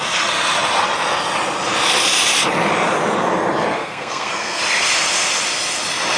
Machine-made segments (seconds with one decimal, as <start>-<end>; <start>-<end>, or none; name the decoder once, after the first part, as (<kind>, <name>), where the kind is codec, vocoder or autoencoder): 3.8-4.6 (codec, SNAC)